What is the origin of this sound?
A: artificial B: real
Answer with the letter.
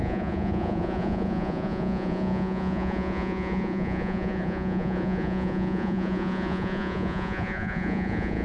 A